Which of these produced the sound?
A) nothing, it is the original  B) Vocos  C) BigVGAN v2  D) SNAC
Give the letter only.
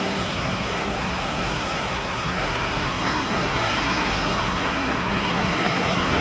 D